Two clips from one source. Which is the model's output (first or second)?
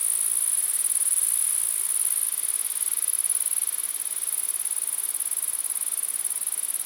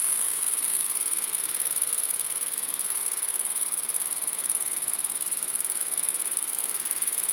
second